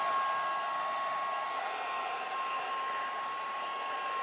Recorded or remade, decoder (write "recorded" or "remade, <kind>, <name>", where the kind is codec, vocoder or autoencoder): recorded